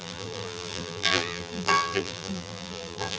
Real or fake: fake